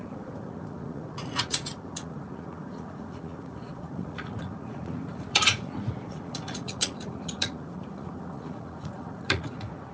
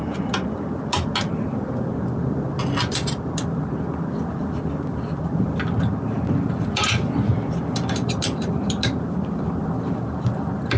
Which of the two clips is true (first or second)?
second